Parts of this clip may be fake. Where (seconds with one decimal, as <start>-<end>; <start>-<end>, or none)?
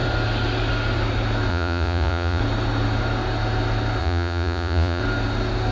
1.5-2.4; 4.0-5.0